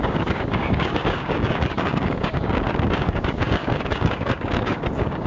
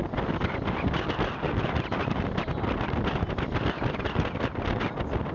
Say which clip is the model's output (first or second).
first